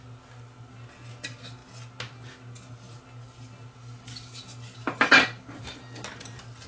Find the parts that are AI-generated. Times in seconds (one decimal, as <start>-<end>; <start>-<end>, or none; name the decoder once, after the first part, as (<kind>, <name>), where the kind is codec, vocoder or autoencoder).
none